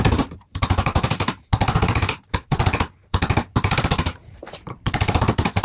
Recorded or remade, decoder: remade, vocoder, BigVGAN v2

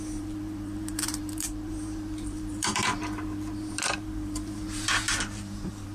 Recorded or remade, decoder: remade, vocoder, BigVGAN v2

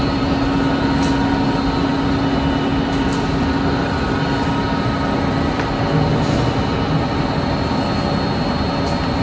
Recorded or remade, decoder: recorded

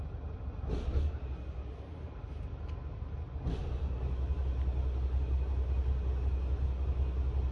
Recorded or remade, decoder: recorded